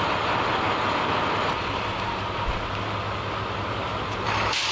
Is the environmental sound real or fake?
real